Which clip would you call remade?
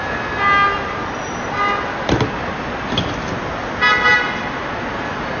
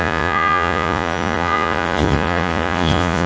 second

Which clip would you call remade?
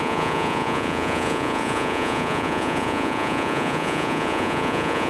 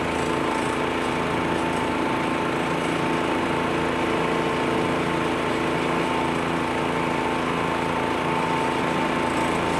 first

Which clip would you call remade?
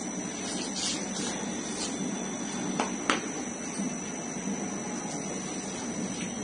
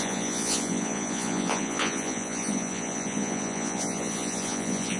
second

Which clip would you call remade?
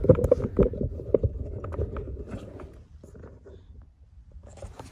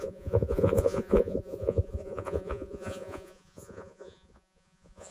second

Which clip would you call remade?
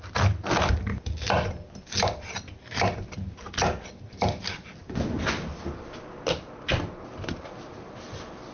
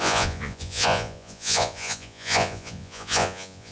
second